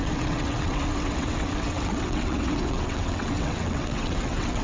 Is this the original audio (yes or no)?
no